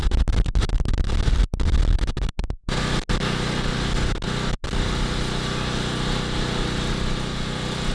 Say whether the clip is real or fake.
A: real